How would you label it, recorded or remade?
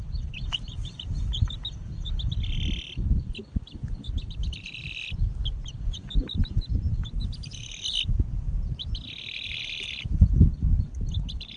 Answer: recorded